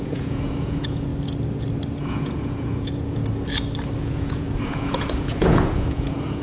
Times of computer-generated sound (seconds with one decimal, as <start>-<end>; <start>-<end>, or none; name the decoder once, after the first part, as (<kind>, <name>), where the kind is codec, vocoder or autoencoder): 0.0-1.1 (vocoder, Vocos); 2.0-3.2; 4.0-6.4